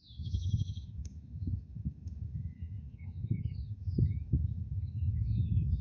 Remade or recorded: remade